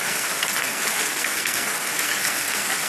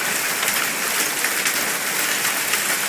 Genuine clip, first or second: second